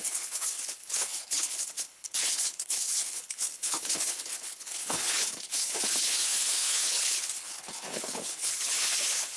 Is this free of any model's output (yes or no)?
no